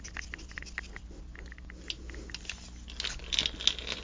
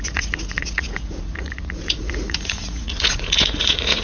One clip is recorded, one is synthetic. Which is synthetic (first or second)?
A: second